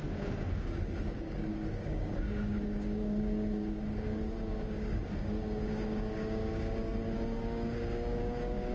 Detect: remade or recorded remade